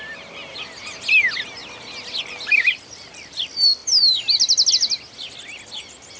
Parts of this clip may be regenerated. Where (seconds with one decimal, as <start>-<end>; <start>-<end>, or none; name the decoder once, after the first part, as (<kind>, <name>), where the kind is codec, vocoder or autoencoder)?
none